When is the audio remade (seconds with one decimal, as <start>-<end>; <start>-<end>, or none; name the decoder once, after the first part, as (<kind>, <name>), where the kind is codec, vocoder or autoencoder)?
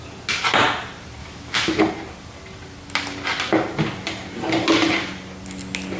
1.2-1.8 (autoencoder, DAC-VAE)